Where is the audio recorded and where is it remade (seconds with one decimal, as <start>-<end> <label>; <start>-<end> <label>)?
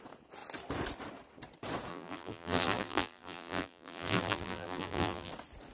0.0-1.9 recorded; 1.9-5.3 remade; 5.3-5.7 recorded